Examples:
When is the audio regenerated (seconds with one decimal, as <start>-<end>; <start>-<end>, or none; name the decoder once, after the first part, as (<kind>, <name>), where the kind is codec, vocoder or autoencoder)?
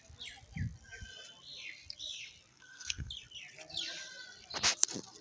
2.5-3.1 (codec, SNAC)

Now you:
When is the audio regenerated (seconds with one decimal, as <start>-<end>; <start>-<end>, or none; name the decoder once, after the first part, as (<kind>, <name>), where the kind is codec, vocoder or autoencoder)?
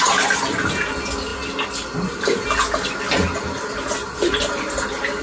none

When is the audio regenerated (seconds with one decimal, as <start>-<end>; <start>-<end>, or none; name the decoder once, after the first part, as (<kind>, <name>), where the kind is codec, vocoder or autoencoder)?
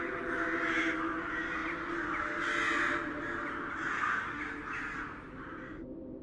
3.9-4.4 (autoencoder, DAC-VAE)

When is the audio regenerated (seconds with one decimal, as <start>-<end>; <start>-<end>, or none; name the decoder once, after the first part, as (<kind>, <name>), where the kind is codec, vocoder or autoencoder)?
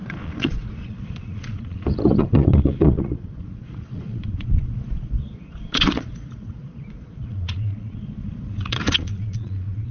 0.0-9.9 (vocoder, Vocos)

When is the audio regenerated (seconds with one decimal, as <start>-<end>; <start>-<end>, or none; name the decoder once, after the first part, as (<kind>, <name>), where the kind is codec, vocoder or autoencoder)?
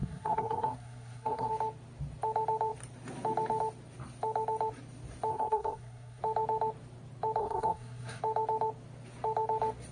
0.0-1.5 (codec, SNAC); 5.3-6.2; 7.4-8.2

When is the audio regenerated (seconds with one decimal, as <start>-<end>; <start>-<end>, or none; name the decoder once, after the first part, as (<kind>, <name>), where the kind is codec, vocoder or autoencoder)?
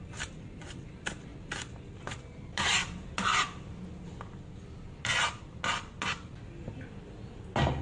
none